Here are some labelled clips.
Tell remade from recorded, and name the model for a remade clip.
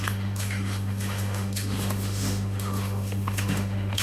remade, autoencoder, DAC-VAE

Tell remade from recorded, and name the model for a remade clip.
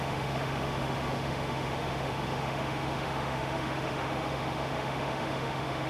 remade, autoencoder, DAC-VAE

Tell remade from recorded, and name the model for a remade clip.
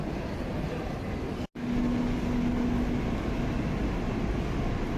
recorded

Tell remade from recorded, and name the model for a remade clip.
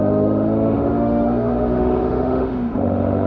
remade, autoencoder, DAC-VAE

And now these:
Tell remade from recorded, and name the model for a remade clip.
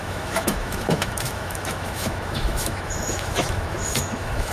remade, autoencoder, DAC-VAE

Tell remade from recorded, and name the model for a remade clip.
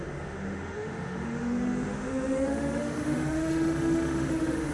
remade, autoencoder, DAC-VAE